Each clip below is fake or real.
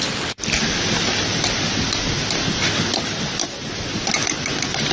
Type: real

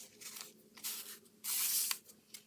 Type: real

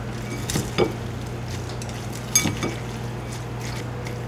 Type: real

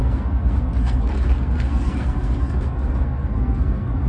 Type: fake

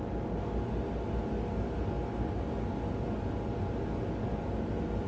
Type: real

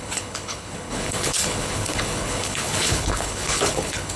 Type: fake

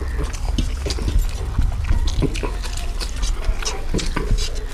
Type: real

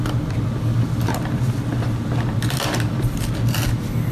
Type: real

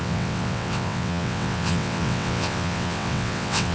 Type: fake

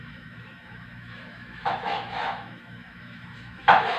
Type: fake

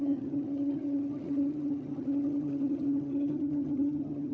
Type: fake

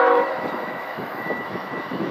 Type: fake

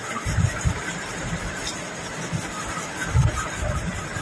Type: fake